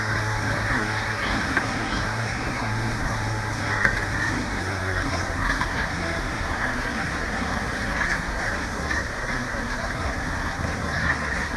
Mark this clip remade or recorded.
remade